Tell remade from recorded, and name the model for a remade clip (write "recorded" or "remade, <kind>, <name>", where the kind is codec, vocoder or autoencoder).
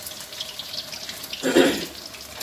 recorded